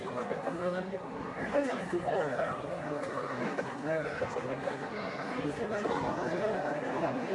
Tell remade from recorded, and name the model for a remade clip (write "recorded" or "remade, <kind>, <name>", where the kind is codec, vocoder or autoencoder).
remade, codec, SNAC